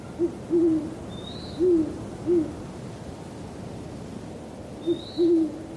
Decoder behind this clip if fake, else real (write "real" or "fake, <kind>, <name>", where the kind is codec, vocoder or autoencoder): real